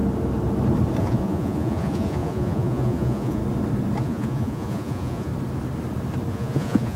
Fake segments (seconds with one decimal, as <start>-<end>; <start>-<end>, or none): 1.0-3.4; 4.0-5.3; 6.3-7.0